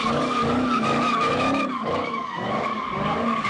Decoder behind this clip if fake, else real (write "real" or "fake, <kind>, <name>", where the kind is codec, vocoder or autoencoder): fake, codec, DAC